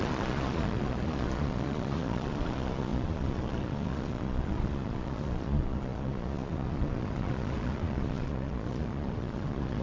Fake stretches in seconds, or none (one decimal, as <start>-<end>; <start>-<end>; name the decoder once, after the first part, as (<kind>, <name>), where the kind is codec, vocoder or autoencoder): 0.0-9.8 (vocoder, Vocos)